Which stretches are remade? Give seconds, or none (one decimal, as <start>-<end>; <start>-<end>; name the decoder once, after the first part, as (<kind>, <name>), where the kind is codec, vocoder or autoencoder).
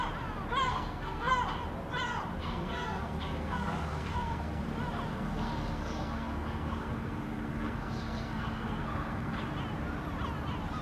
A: 0.6-1.3 (codec, SNAC); 2.4-4.6; 5.1-9.5